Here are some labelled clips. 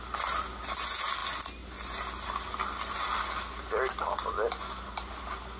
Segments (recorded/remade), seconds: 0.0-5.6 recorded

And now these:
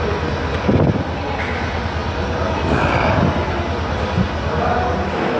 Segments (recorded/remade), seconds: 0.0-5.4 recorded